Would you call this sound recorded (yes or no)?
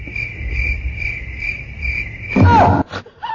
yes